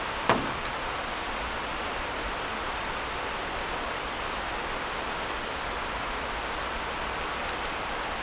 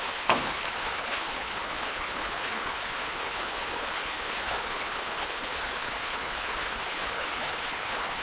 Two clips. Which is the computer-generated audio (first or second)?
second